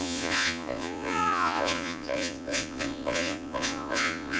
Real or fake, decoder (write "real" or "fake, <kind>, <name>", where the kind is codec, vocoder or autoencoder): fake, vocoder, Vocos